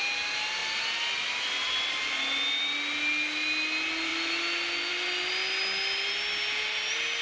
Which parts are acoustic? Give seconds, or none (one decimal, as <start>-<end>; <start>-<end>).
0.0-7.2